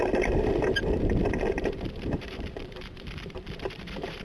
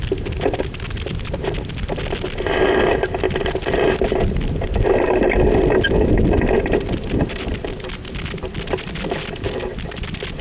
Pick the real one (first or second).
second